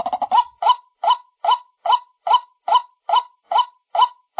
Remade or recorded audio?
recorded